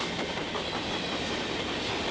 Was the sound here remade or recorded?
recorded